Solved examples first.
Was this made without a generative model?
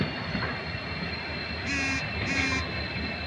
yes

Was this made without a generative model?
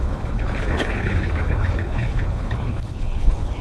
no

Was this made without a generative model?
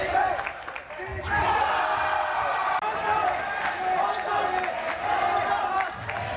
yes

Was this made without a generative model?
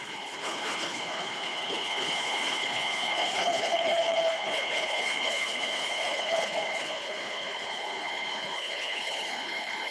no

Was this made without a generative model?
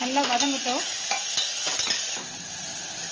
yes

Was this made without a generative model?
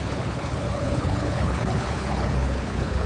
no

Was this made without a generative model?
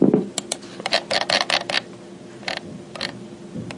yes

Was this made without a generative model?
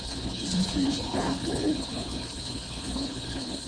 no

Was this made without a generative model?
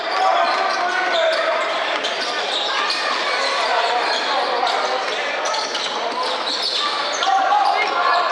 yes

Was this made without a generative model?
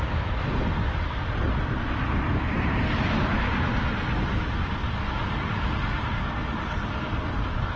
yes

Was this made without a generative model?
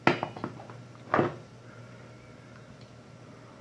yes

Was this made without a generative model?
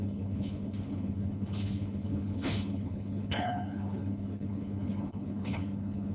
no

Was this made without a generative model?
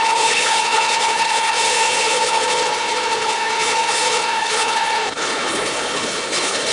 no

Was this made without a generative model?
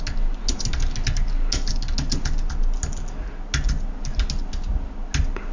yes